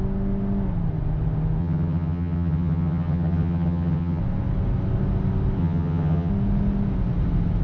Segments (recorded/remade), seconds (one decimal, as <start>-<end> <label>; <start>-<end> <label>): 0.0-1.6 recorded; 1.6-4.2 remade; 4.2-5.6 recorded; 5.6-6.3 remade; 6.3-7.6 recorded